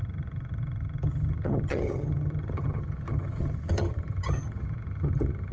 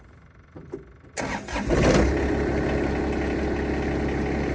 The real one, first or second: second